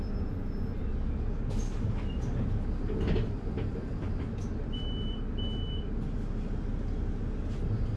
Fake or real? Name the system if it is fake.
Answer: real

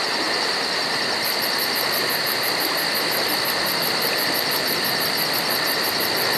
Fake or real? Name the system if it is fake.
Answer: real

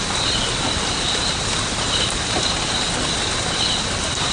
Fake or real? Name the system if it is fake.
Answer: real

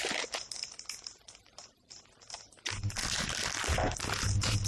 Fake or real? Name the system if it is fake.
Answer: real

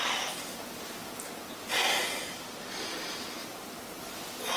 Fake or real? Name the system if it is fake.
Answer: real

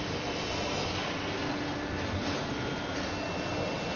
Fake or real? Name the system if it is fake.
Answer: real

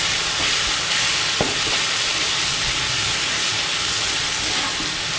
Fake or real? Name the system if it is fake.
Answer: real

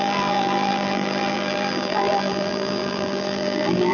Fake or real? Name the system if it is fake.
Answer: fake, vocoder, BigVGAN v2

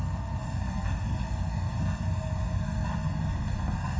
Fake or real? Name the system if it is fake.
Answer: fake, codec, SNAC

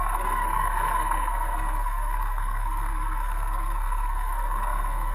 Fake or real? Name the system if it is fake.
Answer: fake, codec, SNAC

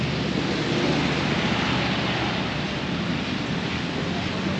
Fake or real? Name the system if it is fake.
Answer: real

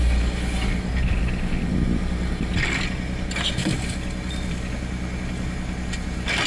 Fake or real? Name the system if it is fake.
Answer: real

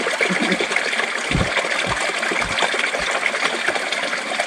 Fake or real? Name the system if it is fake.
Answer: real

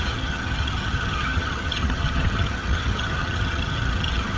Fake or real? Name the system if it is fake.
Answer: fake, vocoder, HiFi-GAN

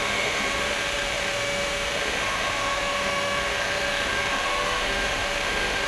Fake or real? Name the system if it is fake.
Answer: fake, autoencoder, DAC-VAE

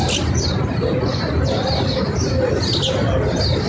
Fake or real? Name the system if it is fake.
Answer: real